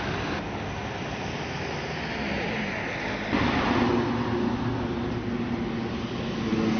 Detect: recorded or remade recorded